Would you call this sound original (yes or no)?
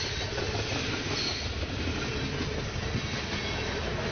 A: yes